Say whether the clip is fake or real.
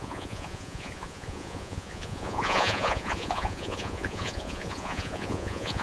fake